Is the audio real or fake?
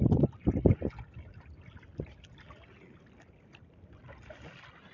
real